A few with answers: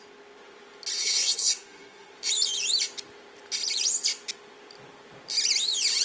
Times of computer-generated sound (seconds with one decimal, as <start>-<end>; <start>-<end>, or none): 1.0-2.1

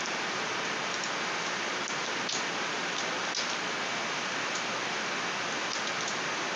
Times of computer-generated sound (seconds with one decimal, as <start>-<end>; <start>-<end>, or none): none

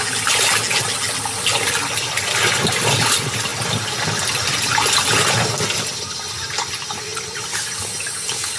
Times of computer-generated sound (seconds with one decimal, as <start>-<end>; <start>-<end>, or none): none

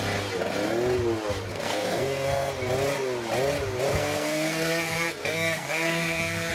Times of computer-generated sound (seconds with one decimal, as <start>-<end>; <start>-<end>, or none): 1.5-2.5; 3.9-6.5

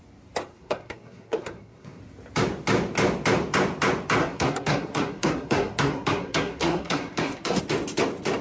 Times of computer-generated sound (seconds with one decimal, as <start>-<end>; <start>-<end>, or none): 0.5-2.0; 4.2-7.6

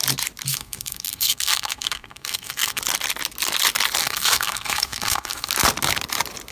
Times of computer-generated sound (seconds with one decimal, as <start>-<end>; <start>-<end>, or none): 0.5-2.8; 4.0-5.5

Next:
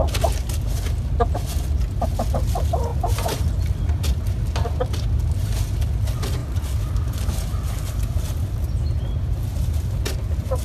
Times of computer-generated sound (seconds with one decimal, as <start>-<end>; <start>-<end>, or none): none